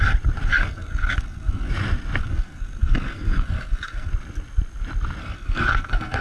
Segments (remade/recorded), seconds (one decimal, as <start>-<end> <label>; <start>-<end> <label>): 0.0-0.5 recorded; 0.5-1.7 remade; 1.7-2.2 recorded; 2.2-4.1 remade; 4.1-5.2 recorded; 5.2-6.2 remade